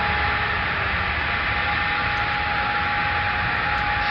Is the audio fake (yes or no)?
no